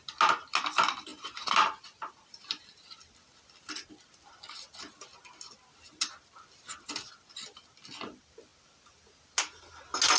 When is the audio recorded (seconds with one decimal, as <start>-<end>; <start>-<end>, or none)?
0.0-10.2